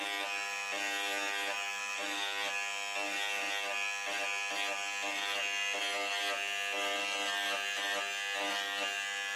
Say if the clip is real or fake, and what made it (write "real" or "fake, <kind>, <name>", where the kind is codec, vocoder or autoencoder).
real